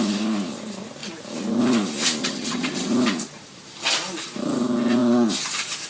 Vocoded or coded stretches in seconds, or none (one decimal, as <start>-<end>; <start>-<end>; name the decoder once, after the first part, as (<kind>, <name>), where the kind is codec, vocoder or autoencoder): 2.2-2.9 (vocoder, HiFi-GAN)